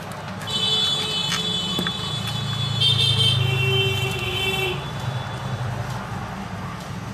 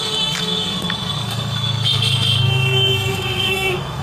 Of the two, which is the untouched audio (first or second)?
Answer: first